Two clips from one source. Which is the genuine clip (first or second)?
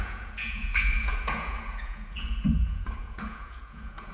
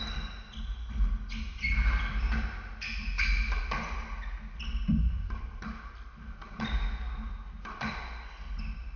second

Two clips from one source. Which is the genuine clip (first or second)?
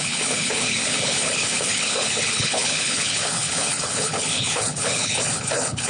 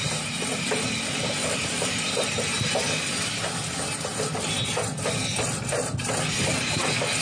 second